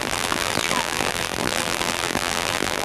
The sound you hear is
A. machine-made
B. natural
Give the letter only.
A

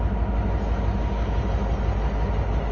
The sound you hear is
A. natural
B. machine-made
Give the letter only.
A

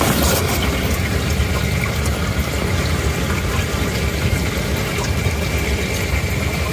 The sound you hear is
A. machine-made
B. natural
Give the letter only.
B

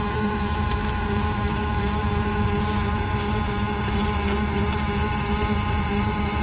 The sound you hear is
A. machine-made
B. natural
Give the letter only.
A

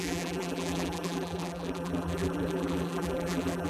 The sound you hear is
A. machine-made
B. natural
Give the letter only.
A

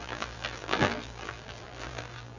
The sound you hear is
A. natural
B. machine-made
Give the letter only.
B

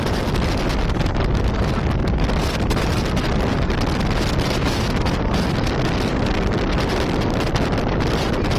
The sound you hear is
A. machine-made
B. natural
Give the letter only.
B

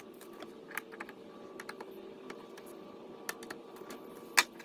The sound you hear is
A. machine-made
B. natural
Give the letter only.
B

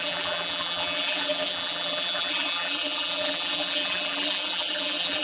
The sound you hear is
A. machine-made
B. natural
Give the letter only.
A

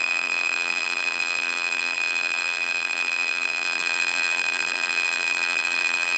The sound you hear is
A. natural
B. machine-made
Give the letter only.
B